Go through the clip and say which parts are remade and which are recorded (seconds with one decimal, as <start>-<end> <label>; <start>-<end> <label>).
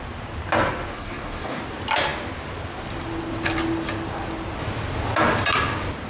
0.0-0.9 recorded; 0.9-1.6 remade; 1.6-6.1 recorded